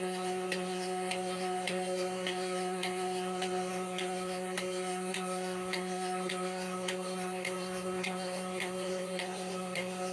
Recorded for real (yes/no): no